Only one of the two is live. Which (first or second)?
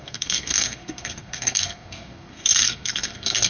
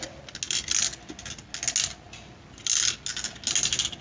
second